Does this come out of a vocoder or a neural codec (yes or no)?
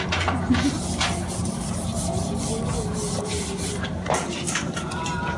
no